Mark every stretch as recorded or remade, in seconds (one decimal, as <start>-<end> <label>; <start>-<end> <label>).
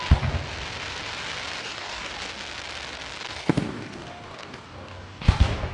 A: 0.0-1.6 recorded; 1.6-2.1 remade; 2.1-3.2 recorded; 3.2-5.7 remade